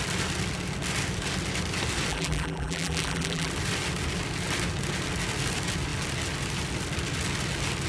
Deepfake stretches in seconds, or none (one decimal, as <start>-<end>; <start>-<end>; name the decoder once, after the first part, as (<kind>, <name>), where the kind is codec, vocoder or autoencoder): 2.1-3.5 (vocoder, BigVGAN v2)